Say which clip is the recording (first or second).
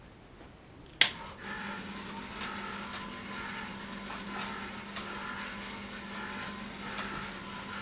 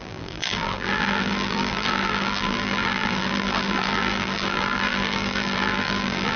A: first